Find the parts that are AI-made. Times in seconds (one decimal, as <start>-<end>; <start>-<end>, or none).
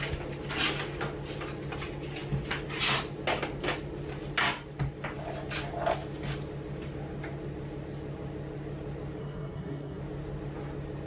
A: 9.2-10.0